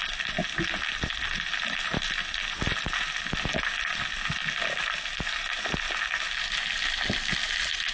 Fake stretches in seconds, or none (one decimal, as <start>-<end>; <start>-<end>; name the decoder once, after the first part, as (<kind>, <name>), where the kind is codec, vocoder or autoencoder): none